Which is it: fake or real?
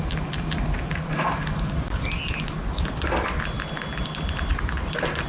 real